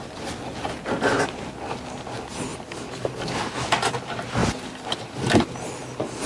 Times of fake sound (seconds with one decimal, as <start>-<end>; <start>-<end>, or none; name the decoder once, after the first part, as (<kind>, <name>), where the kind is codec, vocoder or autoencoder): 2.5-3.5 (vocoder, BigVGAN v2); 4.4-5.4